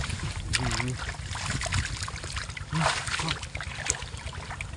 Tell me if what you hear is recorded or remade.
recorded